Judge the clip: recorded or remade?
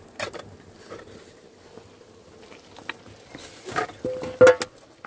recorded